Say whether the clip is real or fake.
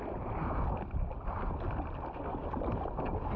real